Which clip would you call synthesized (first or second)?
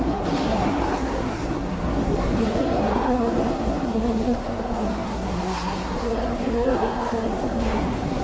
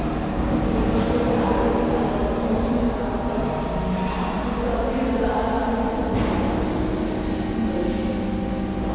first